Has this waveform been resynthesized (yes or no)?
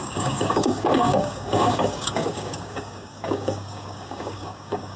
yes